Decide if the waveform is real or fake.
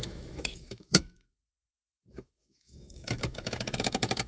fake